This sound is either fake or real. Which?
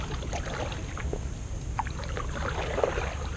real